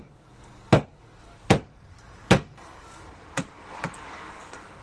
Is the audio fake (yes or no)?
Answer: yes